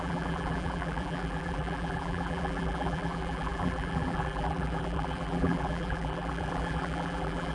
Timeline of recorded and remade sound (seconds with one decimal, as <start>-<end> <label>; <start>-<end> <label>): 0.0-7.5 remade